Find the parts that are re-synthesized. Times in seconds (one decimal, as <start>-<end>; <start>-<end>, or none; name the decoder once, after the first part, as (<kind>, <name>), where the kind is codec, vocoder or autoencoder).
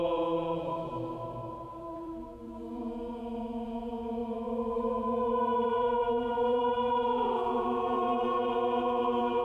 0.0-0.9 (vocoder, Vocos); 1.5-9.4